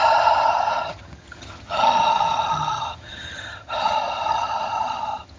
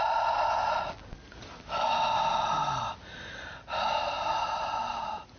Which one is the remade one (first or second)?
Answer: first